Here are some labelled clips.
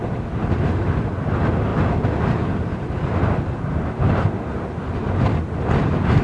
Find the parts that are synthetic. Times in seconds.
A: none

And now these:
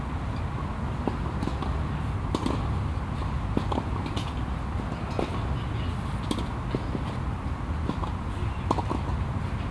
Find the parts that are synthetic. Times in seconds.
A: none